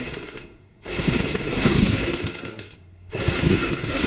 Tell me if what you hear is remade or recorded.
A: remade